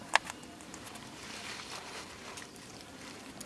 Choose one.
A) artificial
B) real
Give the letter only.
A